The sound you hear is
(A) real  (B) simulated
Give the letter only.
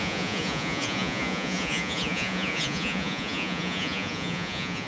B